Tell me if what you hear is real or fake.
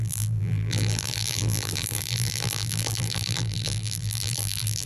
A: fake